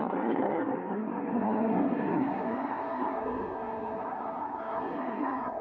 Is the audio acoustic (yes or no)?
no